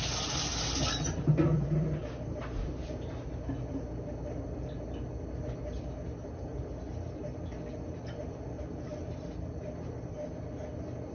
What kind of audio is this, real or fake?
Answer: real